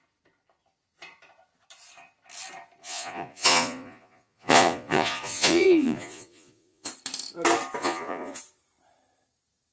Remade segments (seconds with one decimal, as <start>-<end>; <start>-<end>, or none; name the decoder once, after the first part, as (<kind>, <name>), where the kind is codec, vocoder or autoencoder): 2.8-6.9 (vocoder, Vocos); 7.8-8.4